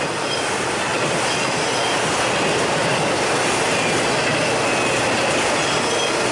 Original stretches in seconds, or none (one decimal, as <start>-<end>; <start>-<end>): 0.0-6.3